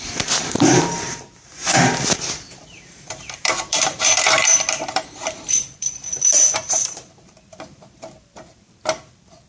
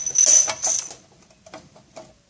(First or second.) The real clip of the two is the second